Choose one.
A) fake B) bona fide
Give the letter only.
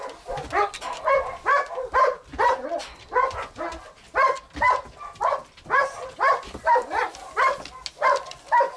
B